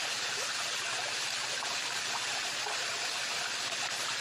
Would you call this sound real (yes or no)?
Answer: yes